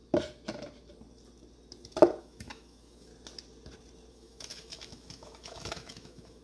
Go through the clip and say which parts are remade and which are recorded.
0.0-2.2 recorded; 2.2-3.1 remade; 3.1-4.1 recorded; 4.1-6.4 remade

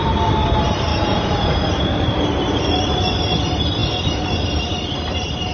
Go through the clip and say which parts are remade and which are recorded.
0.0-0.9 recorded; 0.9-1.6 remade; 1.6-5.5 recorded